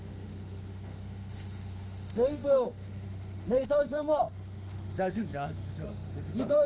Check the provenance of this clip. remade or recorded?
remade